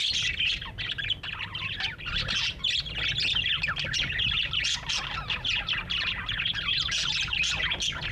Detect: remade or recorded recorded